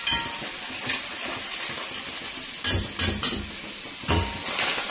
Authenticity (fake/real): real